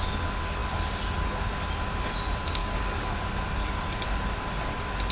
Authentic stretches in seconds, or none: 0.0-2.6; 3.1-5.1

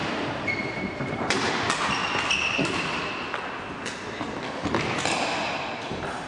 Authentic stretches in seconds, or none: 1.5-6.3

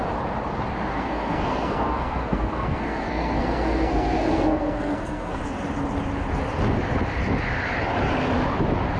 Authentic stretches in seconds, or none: 0.0-0.9; 5.4-9.0

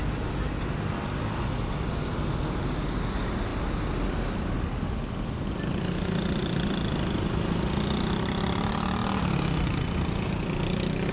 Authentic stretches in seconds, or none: 0.0-11.1

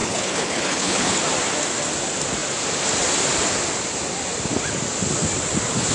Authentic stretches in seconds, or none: 1.2-5.9

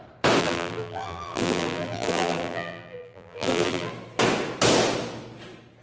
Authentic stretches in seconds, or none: 0.0-0.4; 3.9-5.8

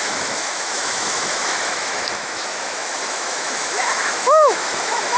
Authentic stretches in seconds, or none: none